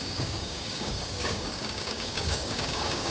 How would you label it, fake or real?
fake